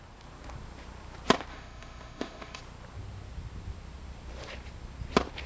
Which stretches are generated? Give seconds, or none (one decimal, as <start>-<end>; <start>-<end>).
1.5-2.6